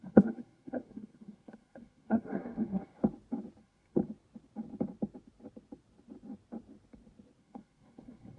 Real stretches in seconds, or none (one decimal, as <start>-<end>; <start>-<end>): 3.0-3.6; 4.0-7.4